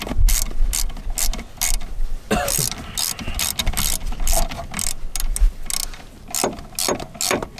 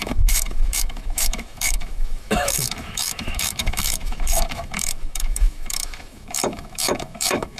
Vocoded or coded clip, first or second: second